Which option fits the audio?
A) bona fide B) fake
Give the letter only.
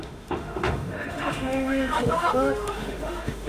B